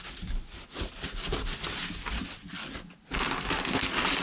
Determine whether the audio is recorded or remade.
recorded